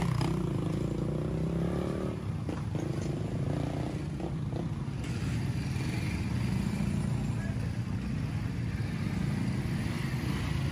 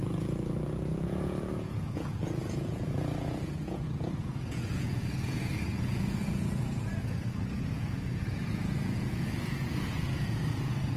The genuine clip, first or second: first